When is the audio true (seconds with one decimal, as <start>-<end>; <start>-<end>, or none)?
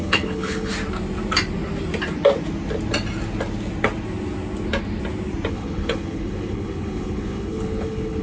0.7-5.5